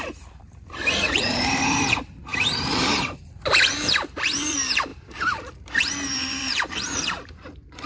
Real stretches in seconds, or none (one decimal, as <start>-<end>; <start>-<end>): none